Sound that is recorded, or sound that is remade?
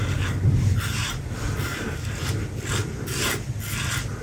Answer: recorded